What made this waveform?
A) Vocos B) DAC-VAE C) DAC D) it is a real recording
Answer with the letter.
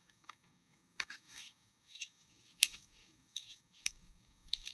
C